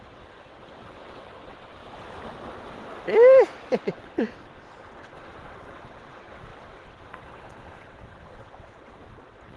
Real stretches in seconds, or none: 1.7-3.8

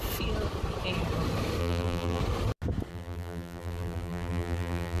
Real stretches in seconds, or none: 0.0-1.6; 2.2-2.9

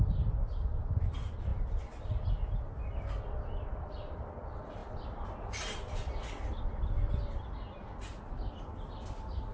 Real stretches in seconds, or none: 0.0-9.5

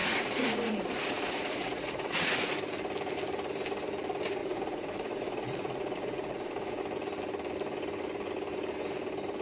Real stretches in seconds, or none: 2.5-4.4; 6.8-9.4

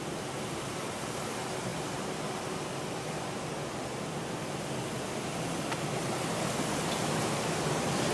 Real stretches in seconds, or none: 0.0-8.1

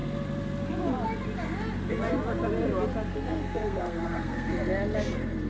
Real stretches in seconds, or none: 0.0-3.1; 4.5-5.5

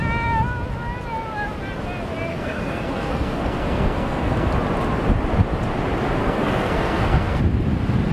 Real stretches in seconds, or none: 0.0-2.3; 4.5-6.2; 7.4-8.1

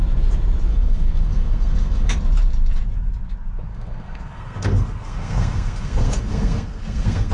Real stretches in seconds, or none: 0.0-0.7; 2.1-3.7